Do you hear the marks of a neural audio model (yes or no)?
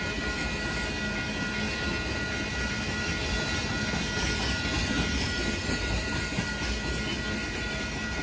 no